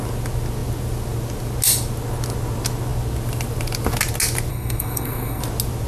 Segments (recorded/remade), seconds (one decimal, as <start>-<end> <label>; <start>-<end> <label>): 0.0-4.5 recorded; 4.5-5.4 remade; 5.4-5.9 recorded